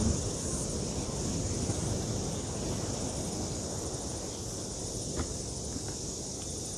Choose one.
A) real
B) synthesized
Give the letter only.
A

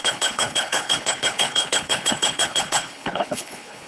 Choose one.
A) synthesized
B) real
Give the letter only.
A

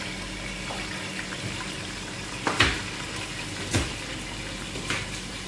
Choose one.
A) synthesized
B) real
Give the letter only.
B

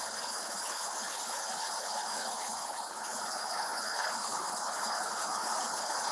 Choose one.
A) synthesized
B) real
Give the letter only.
A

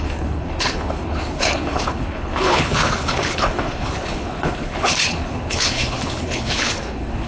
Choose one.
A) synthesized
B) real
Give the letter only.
A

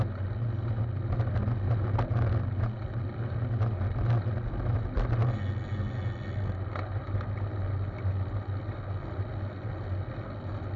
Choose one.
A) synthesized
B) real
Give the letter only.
B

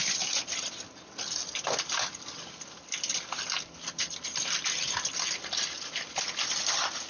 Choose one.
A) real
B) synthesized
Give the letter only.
A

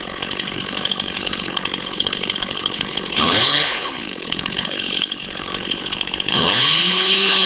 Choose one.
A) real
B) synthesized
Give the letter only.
B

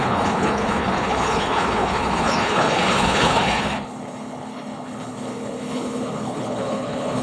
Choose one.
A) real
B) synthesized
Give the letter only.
B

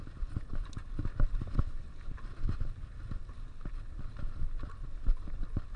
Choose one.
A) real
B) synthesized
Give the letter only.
A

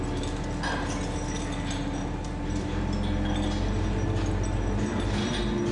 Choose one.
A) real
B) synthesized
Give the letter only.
A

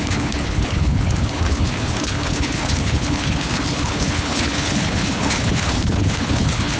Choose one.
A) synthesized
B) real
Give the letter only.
A